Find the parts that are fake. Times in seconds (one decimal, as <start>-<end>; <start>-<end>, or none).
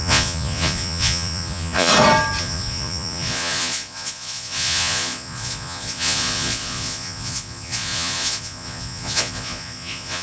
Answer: 0.0-1.9; 2.4-10.2